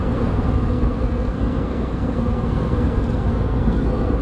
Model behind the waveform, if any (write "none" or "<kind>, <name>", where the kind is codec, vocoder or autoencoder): codec, SNAC